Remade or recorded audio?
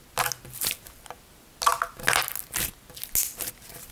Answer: recorded